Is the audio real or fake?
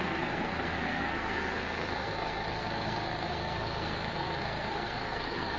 fake